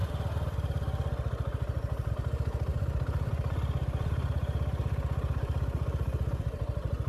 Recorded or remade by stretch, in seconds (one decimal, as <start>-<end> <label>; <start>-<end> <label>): 0.0-2.7 recorded; 2.7-3.3 remade; 3.3-4.4 recorded; 4.4-6.3 remade; 6.3-7.1 recorded

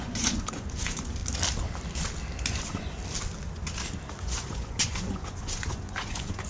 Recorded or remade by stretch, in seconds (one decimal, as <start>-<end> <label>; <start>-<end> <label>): 0.0-1.2 remade; 1.2-2.5 recorded; 2.5-3.0 remade; 3.0-4.2 recorded; 4.2-6.5 remade

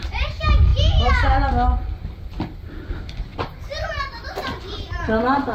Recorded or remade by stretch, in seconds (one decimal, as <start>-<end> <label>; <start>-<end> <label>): 0.0-3.3 recorded; 3.3-4.6 remade; 4.6-5.5 recorded

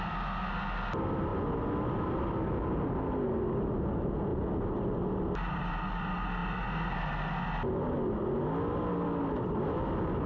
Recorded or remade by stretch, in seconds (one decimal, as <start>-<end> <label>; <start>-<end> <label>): 0.0-10.3 recorded

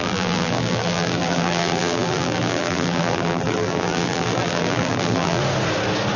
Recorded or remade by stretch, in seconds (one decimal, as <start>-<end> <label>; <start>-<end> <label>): 0.0-5.4 remade; 5.4-6.2 recorded

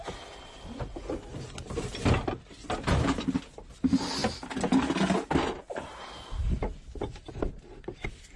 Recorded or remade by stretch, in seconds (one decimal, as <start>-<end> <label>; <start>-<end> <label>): 0.0-8.4 recorded

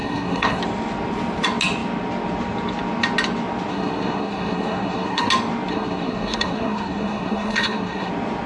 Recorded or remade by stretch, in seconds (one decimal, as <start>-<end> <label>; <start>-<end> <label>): 0.0-0.6 remade; 0.6-3.7 recorded; 3.7-5.3 remade; 5.3-5.7 recorded; 5.7-8.1 remade; 8.1-8.5 recorded